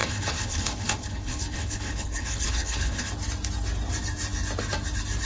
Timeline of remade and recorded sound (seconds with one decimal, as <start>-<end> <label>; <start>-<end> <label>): 0.0-3.1 remade; 3.1-5.2 recorded